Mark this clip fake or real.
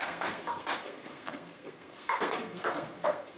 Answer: fake